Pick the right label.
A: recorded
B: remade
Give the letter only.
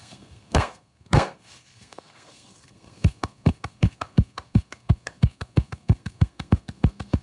B